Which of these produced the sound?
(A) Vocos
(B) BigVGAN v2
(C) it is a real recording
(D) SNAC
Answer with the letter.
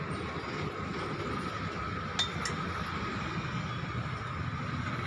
C